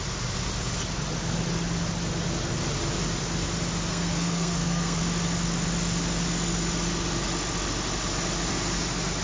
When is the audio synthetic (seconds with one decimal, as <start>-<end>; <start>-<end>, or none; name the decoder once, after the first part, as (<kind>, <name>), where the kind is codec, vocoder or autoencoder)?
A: 3.9-5.0 (codec, SNAC)